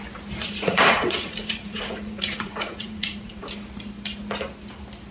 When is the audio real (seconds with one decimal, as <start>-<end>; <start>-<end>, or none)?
0.0-0.4; 3.5-5.1